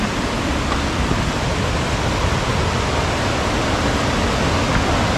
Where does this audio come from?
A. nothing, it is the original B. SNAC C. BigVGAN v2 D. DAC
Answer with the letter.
A